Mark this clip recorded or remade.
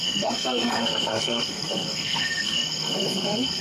remade